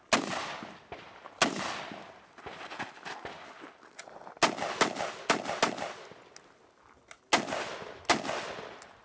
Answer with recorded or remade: recorded